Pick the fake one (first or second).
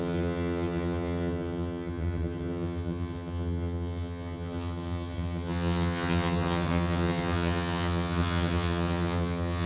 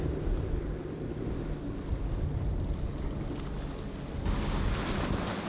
first